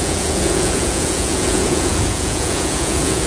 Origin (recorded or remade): remade